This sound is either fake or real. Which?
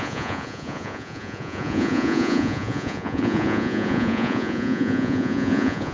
fake